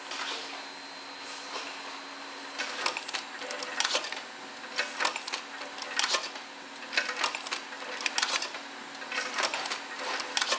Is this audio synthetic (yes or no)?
no